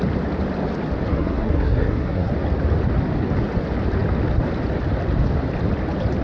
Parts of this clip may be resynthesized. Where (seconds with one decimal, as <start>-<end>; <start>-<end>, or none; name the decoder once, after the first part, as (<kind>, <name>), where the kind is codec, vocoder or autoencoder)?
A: 1.1-2.3 (codec, SNAC)